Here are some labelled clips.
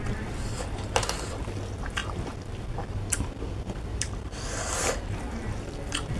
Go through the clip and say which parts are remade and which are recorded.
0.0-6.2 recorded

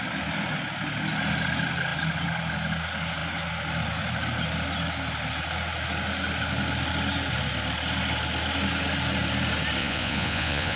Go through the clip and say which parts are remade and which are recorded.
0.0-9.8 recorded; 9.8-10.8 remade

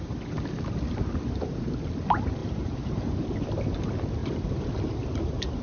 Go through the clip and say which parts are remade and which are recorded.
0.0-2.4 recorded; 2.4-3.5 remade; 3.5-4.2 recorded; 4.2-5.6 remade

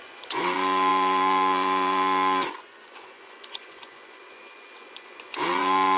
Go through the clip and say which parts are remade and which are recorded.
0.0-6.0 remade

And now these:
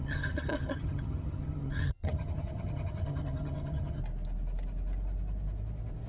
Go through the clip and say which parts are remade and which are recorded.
0.0-4.0 remade; 4.0-6.1 recorded

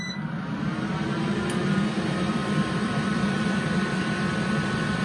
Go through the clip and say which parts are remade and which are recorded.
0.0-2.4 recorded; 2.4-4.1 remade; 4.1-5.0 recorded

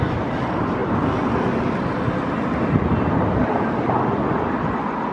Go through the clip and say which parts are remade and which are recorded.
0.0-5.1 recorded